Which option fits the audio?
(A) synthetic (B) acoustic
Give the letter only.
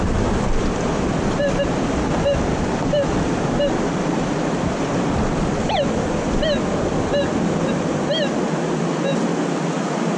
B